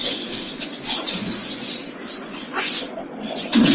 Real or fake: fake